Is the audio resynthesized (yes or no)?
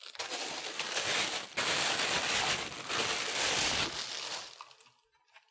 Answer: no